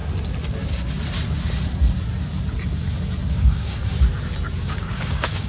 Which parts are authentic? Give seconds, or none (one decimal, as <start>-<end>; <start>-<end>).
0.0-3.3; 3.8-4.6